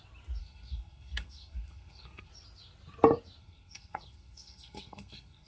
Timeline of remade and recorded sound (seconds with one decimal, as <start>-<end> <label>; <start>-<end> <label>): 0.0-0.4 recorded; 0.4-2.3 remade; 2.3-3.4 recorded; 3.4-5.5 remade